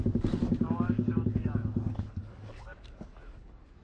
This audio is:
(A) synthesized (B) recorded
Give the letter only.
A